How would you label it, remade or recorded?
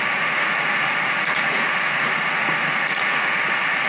remade